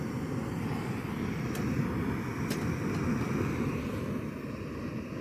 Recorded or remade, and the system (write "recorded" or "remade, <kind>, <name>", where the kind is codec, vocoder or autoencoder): recorded